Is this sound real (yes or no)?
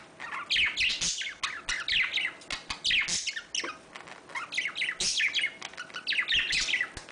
yes